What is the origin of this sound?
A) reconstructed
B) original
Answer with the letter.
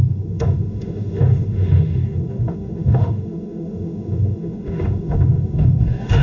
A